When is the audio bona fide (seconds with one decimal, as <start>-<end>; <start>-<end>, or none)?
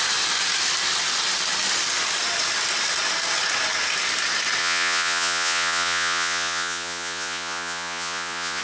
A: 0.0-4.6